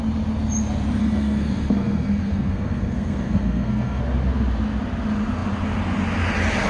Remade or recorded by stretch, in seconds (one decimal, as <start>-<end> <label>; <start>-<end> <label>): 0.0-1.0 recorded; 1.0-4.0 remade; 4.0-6.7 recorded